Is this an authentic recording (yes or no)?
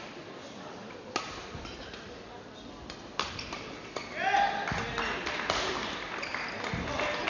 yes